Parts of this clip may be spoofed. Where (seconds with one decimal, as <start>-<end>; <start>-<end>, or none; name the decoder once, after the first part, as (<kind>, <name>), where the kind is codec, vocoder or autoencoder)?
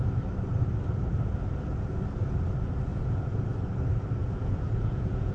2.9-3.4 (vocoder, Vocos); 4.2-5.3